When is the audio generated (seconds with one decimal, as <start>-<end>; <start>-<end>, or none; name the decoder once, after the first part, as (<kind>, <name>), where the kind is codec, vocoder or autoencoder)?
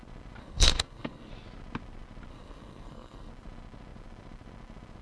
0.4-1.3 (codec, SNAC); 2.3-3.3